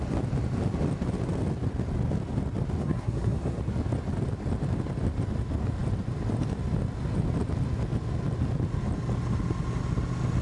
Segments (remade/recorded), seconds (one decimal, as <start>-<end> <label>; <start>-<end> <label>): 0.0-2.8 recorded; 2.8-3.6 remade; 3.6-10.4 recorded